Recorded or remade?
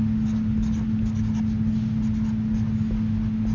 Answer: recorded